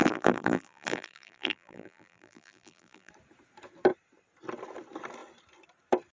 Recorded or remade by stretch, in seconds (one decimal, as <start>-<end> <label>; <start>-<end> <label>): 0.0-3.1 remade; 3.1-6.2 recorded